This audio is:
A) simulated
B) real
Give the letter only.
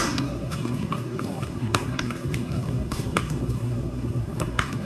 A